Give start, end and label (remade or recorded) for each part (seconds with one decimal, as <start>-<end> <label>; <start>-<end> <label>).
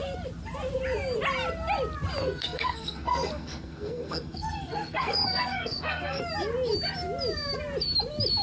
0.0-2.2 recorded; 2.2-6.2 remade; 6.2-8.4 recorded